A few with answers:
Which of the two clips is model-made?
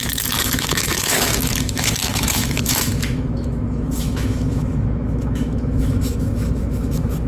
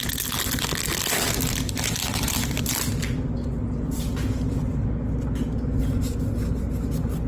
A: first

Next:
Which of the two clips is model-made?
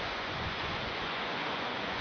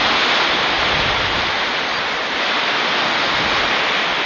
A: first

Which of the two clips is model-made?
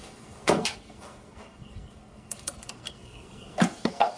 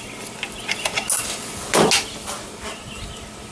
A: first